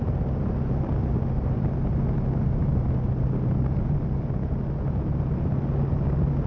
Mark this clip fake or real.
real